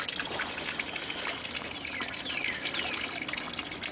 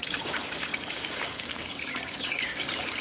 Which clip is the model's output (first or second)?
second